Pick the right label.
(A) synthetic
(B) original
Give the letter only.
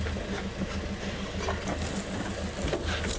B